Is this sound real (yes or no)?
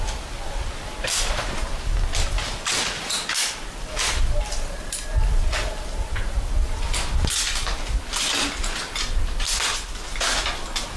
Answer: yes